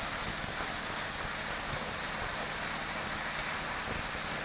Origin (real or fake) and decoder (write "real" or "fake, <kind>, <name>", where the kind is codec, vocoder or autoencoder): real